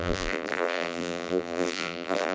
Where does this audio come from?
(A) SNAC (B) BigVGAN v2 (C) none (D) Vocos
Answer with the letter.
B